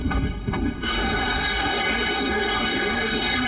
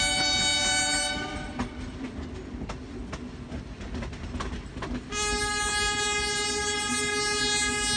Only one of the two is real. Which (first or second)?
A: second